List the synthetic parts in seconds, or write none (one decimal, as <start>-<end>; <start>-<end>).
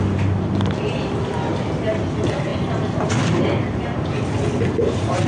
none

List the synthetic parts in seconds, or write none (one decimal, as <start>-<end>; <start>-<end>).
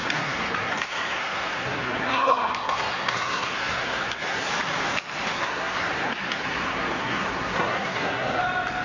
0.0-4.5; 5.3-8.4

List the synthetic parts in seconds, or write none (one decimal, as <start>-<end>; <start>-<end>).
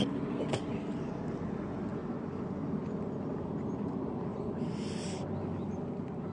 none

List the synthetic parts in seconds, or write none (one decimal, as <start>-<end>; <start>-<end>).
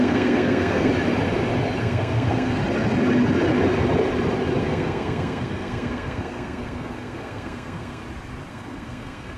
0.0-0.9; 1.8-2.6; 4.6-8.0; 8.5-9.4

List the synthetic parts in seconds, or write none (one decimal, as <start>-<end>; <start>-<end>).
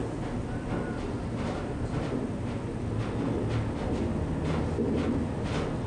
none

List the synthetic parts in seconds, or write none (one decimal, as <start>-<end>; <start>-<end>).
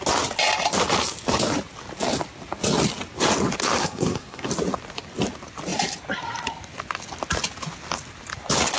3.8-4.5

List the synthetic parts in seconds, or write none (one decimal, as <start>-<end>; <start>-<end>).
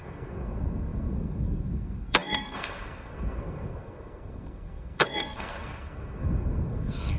0.0-7.2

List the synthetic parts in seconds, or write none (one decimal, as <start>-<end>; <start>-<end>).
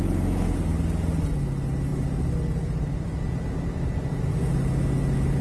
none